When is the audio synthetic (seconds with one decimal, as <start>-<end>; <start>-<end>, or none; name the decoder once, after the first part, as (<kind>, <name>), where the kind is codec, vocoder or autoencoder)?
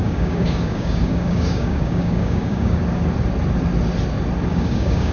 0.0-2.8 (codec, DAC); 4.5-5.1